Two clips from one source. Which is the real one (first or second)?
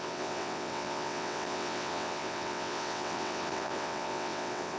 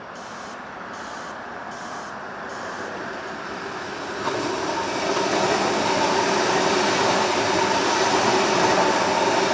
second